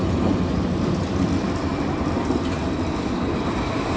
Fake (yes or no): no